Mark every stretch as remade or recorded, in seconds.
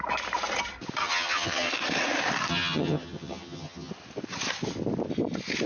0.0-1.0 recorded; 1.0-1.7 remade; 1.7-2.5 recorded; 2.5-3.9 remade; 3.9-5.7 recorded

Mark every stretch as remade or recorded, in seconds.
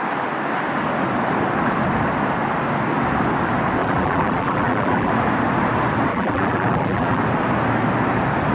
0.0-3.8 recorded; 3.8-5.1 remade; 5.1-6.1 recorded; 6.1-7.2 remade; 7.2-8.5 recorded